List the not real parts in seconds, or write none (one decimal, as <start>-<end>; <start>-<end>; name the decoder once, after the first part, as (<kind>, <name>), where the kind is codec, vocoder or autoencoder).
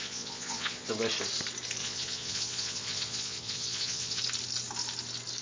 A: 0.0-0.9 (vocoder, Vocos); 1.8-4.2